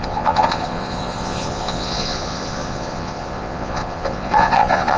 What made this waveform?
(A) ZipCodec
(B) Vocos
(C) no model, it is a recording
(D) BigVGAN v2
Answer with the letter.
B